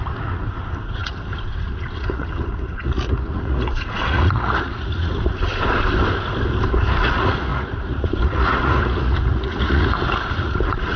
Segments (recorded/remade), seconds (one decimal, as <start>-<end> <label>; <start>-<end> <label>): 0.0-5.5 remade; 5.5-6.7 recorded; 6.7-11.0 remade